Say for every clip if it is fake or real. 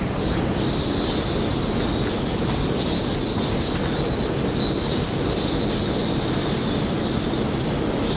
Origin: real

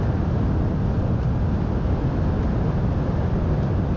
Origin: fake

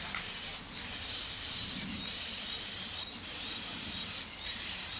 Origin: fake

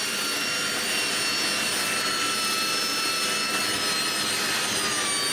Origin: real